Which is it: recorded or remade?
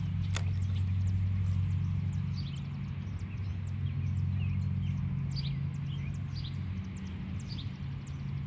recorded